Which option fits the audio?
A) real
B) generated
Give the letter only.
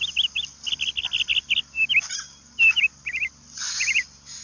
A